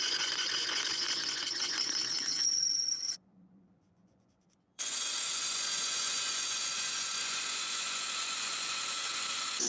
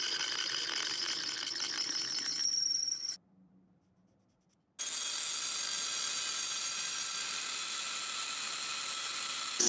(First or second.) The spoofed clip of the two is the first